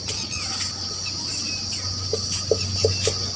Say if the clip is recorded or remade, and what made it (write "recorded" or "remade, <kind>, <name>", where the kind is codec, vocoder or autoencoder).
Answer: recorded